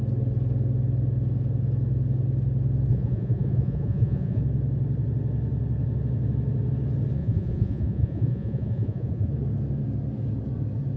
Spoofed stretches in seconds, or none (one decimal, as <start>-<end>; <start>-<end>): 2.9-4.4; 7.2-9.3